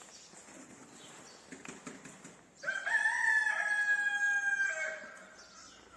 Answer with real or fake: real